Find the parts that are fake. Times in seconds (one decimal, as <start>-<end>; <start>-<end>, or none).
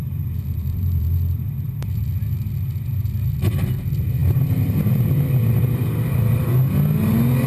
0.0-2.0; 4.2-6.5